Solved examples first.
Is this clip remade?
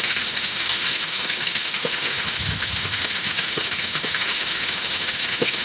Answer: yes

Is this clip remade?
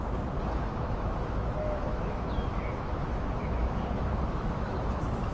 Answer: yes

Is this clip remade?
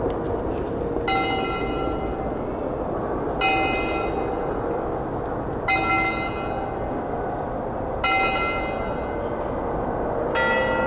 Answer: no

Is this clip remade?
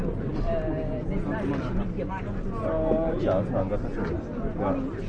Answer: no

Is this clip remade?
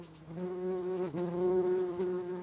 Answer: yes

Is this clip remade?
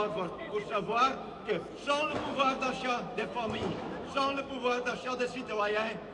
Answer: yes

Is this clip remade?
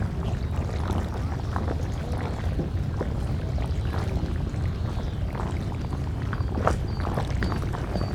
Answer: no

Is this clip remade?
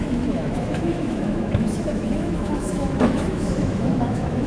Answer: yes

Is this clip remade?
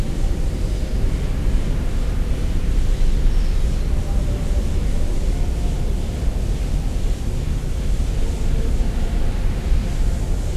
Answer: no